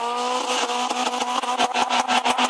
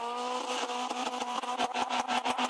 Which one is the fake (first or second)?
second